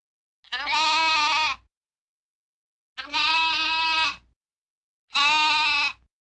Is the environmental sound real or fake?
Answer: real